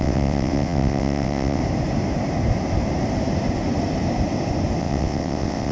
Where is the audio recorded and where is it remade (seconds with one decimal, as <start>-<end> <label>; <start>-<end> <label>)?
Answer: 0.0-1.6 remade; 1.6-4.8 recorded; 4.8-5.7 remade